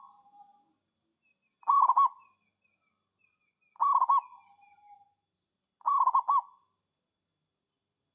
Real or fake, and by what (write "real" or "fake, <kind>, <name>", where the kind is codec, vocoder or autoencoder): real